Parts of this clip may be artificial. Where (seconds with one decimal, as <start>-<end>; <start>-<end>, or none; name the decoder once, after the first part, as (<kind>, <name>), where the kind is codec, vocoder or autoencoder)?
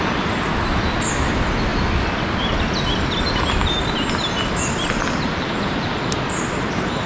none